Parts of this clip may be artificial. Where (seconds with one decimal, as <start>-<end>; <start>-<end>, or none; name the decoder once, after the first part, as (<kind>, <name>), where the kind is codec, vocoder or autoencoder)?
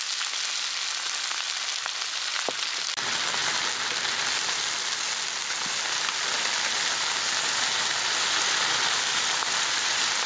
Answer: none